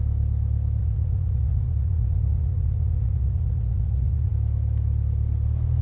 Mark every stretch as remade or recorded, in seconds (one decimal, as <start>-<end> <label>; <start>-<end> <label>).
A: 0.0-0.8 recorded; 0.8-4.3 remade; 4.3-5.8 recorded